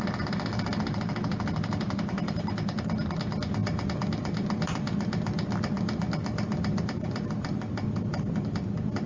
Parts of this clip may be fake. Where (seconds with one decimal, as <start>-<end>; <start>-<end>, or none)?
0.0-9.1